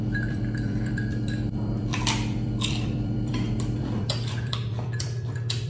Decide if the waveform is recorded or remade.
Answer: remade